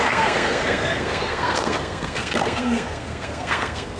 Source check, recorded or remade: remade